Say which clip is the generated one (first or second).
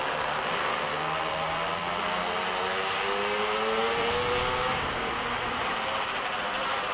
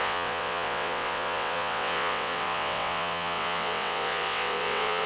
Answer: second